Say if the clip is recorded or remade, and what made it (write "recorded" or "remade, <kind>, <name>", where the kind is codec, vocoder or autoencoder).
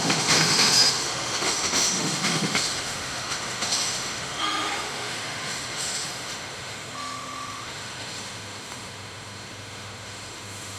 remade, autoencoder, DAC-VAE